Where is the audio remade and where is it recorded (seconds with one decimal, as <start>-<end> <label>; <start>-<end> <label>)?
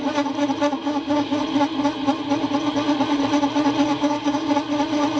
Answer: 0.0-0.8 recorded; 0.8-1.4 remade; 1.4-3.9 recorded; 3.9-4.5 remade; 4.5-5.2 recorded